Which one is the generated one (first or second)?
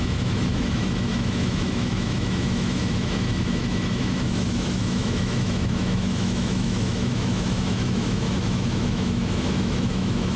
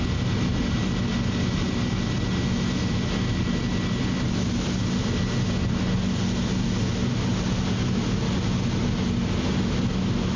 first